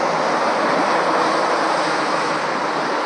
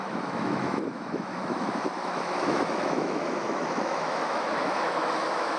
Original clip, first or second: first